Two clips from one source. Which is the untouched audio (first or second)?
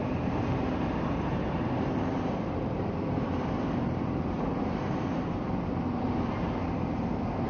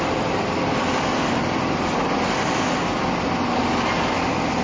second